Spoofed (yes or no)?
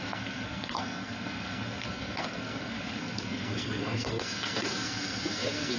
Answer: yes